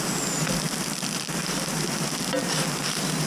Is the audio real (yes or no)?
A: yes